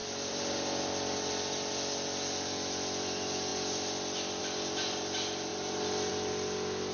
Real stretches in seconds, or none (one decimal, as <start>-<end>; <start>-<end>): 1.3-3.5; 4.4-5.5; 6.1-6.9